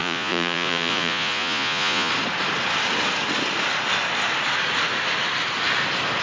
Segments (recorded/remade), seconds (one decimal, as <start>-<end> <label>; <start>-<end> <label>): 0.0-2.1 remade; 2.1-6.2 recorded